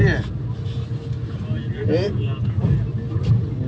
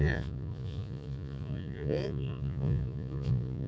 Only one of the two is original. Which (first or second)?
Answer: first